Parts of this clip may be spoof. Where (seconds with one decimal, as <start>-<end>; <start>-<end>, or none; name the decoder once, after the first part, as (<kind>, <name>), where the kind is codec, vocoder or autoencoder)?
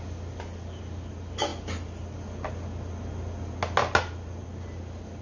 none